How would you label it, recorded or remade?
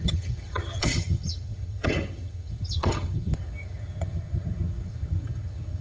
remade